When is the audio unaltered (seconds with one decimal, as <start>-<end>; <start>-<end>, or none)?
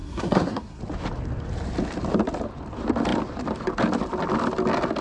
0.8-5.0